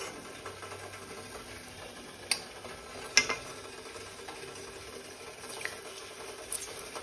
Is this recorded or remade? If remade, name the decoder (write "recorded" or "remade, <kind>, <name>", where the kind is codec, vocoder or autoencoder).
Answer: recorded